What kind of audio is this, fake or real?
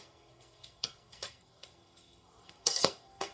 fake